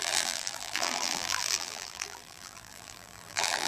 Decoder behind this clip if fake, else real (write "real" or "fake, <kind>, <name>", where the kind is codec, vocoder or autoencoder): fake, vocoder, BigVGAN v2